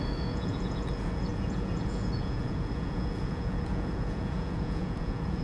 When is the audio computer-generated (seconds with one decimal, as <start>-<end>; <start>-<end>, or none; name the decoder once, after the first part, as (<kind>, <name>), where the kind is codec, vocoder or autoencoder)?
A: 0.0-5.4 (vocoder, Vocos)